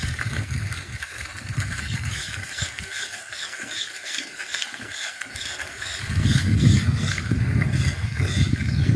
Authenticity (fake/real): fake